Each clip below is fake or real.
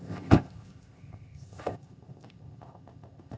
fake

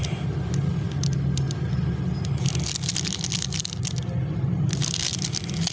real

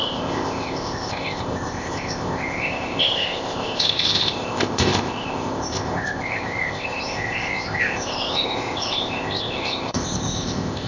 fake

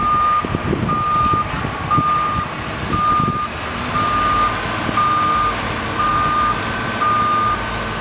real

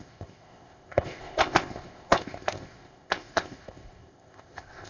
fake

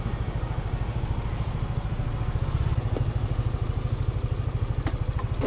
real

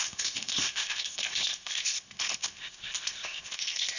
fake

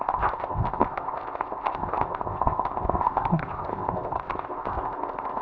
fake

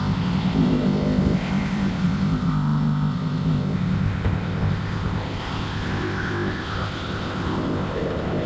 fake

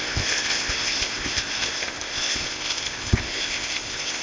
fake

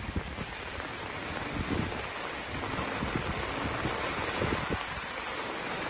real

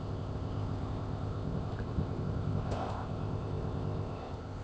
fake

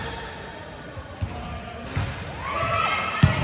real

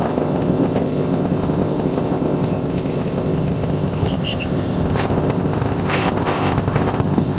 fake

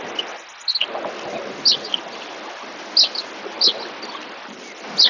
real